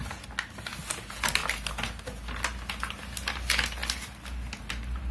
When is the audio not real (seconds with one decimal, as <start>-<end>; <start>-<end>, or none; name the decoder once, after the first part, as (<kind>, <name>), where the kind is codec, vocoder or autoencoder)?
none